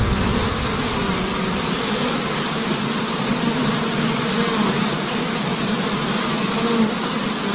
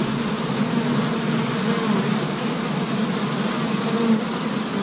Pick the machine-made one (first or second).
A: first